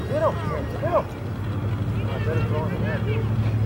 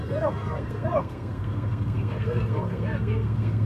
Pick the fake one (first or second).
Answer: second